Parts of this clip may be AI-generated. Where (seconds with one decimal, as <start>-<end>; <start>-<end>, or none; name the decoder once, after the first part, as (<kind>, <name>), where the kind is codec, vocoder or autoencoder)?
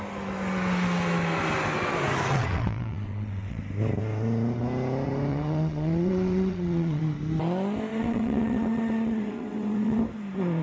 2.3-3.6 (vocoder, WaveNeXt); 5.3-7.0; 7.9-10.0